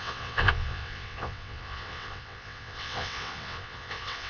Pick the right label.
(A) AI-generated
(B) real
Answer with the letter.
A